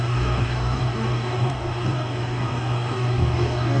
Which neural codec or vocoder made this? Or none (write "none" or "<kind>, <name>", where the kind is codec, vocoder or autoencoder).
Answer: codec, DAC